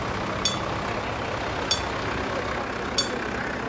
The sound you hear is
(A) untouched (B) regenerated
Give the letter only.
A